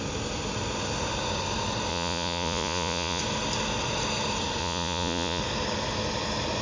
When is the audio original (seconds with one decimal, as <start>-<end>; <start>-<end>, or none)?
0.0-1.9; 3.2-4.6; 5.4-6.6

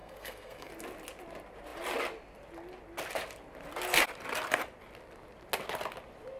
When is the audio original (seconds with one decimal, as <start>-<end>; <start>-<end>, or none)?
0.7-6.4

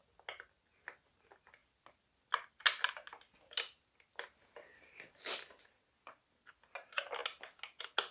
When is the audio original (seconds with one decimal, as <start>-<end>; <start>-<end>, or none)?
0.0-8.1

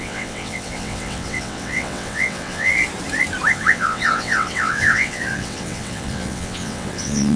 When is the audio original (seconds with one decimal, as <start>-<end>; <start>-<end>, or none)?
2.7-3.5